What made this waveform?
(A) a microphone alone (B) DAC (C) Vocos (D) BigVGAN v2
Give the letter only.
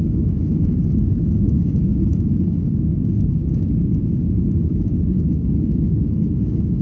B